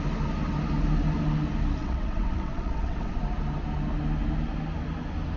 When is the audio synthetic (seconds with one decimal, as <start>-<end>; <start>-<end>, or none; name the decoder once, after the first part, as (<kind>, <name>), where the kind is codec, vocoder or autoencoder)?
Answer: 1.8-3.2 (vocoder, WaveNeXt)